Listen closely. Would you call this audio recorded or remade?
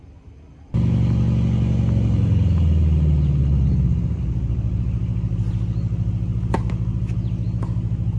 recorded